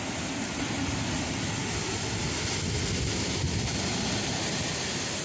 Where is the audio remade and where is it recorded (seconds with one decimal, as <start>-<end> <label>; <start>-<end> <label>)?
0.0-5.2 recorded